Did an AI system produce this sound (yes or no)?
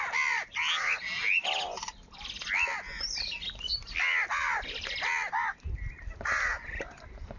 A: no